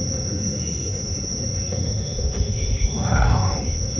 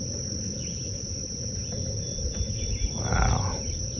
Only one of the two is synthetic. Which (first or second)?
first